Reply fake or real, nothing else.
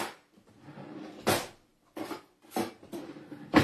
real